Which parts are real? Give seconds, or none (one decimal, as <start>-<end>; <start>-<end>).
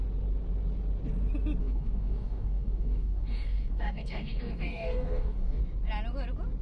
0.0-1.6; 5.6-6.6